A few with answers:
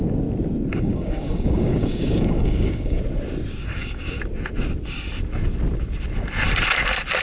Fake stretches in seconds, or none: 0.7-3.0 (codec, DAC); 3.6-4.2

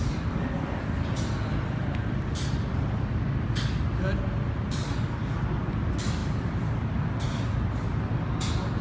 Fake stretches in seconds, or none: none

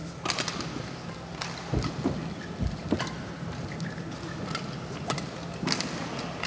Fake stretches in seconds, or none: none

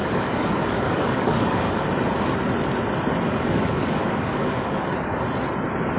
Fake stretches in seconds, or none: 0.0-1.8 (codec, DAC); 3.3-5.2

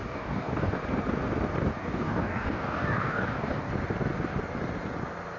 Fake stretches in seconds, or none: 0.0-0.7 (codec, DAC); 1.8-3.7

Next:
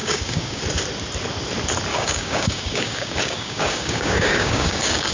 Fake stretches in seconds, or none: 0.0-0.6 (codec, DAC); 1.9-5.1

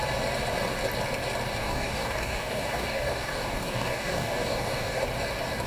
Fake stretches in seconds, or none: 1.6-5.0 (codec, DAC)

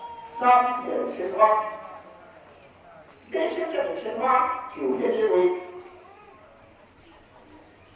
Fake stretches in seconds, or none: 5.0-6.2 (codec, DAC)